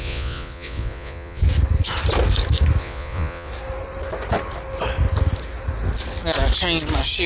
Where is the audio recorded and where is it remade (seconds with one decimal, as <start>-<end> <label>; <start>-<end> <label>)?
0.0-1.4 remade; 1.4-2.8 recorded; 2.8-3.5 remade; 3.5-7.3 recorded